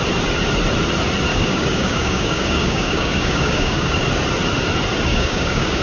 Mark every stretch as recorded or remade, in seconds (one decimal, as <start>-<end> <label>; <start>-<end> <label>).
0.0-1.3 recorded; 1.3-4.1 remade; 4.1-5.1 recorded; 5.1-5.8 remade